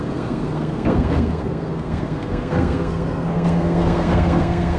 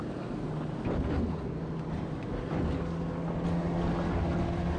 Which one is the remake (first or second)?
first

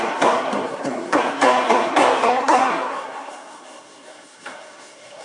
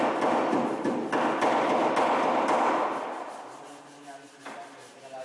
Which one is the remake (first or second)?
first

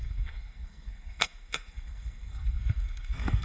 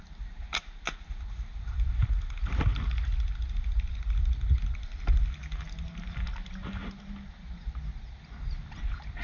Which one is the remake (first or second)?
first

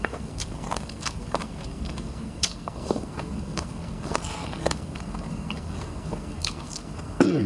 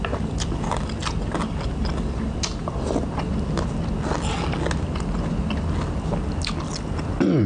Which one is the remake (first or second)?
first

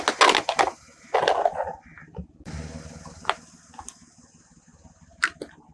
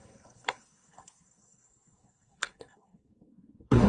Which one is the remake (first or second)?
second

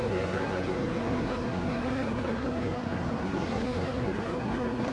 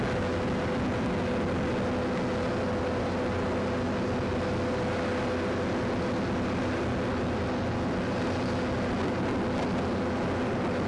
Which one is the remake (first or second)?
first